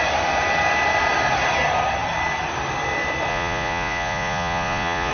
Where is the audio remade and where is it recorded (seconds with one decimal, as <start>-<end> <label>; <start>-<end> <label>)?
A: 0.0-3.3 recorded; 3.3-5.1 remade